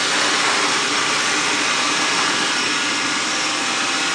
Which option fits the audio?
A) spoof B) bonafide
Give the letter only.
B